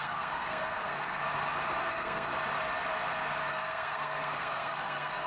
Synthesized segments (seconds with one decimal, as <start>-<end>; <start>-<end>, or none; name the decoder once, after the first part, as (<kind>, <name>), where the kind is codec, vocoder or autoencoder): 0.0-1.2 (codec, SNAC); 1.9-2.3; 3.5-5.3